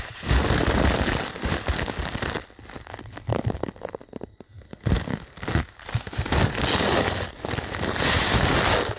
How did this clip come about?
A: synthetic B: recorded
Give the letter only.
B